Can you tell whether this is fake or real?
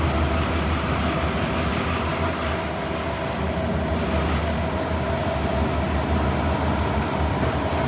real